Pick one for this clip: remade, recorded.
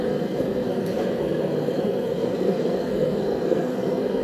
remade